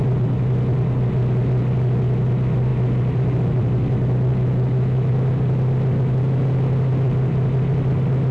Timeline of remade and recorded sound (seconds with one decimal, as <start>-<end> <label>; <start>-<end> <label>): 0.0-4.3 recorded; 4.3-5.1 remade; 5.1-8.3 recorded